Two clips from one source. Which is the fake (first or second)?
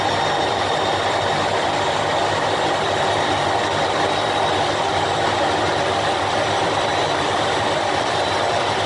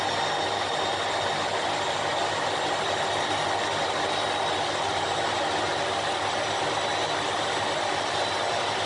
first